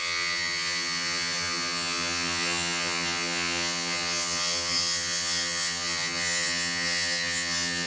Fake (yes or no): yes